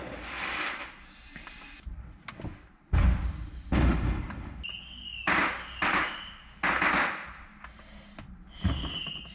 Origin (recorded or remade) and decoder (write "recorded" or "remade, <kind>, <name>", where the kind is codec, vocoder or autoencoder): recorded